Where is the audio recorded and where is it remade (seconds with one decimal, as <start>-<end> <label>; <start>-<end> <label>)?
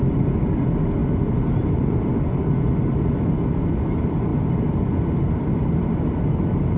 0.0-6.8 recorded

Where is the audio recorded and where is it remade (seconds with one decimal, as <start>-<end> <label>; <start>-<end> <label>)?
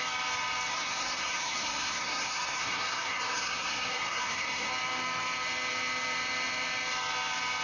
0.0-0.7 recorded; 0.7-4.7 remade; 4.7-7.6 recorded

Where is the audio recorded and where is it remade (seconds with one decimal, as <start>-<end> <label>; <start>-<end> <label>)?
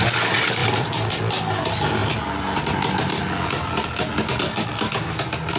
0.0-2.0 remade; 2.0-4.4 recorded; 4.4-5.6 remade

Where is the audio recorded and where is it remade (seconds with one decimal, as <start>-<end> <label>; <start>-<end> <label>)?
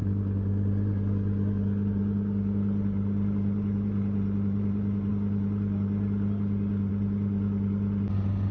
0.0-8.5 recorded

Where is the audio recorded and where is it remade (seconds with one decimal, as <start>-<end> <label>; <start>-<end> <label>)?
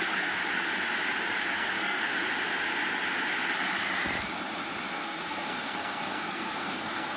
0.0-0.4 remade; 0.4-1.4 recorded; 1.4-2.0 remade; 2.0-4.9 recorded; 4.9-7.2 remade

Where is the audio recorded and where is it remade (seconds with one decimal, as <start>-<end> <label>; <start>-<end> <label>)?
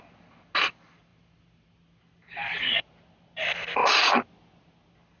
0.0-5.2 recorded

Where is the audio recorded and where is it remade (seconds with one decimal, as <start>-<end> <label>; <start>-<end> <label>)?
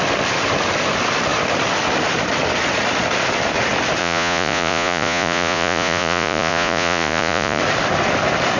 0.0-4.0 recorded; 4.0-7.6 remade; 7.6-8.6 recorded